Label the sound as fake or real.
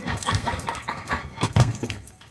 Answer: fake